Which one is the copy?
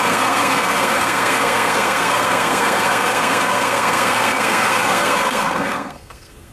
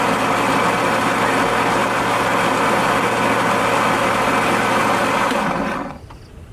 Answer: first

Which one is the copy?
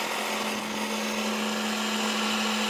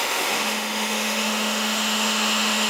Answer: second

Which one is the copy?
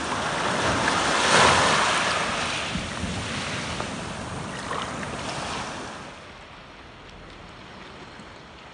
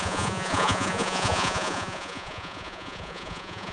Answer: second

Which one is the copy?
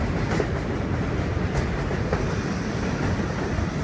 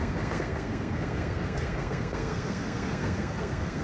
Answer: second